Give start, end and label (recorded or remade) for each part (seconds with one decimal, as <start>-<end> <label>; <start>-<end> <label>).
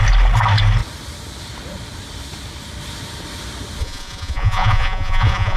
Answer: 0.0-3.8 recorded; 3.8-5.6 remade